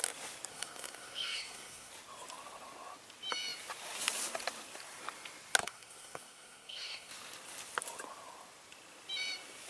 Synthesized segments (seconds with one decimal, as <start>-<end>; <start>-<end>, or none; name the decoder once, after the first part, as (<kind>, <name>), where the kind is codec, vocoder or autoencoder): 0.5-1.9 (codec, SNAC); 5.6-7.1